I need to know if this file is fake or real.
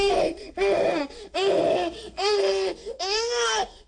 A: fake